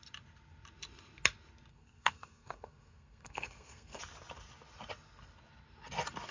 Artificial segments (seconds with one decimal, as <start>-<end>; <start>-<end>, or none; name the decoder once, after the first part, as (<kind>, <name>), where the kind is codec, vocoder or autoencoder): 1.7-4.0 (codec, SNAC)